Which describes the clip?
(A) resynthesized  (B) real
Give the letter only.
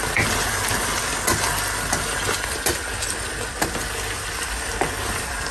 B